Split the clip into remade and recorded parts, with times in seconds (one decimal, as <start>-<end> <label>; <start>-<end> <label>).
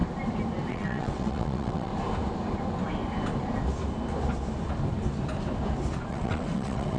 0.0-0.7 recorded; 0.7-1.9 remade; 1.9-6.1 recorded; 6.1-7.0 remade